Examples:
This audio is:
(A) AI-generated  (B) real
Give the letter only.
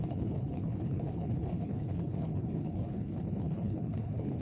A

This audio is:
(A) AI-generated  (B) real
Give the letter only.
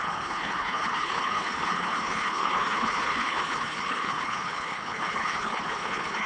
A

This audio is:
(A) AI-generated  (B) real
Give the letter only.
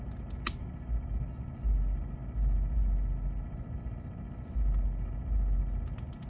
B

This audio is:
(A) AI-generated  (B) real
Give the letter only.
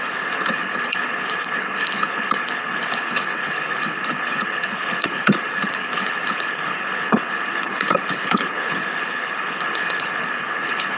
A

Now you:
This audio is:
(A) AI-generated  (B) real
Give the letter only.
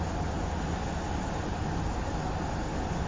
B